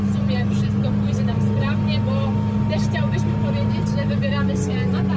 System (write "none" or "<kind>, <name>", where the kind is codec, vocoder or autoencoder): none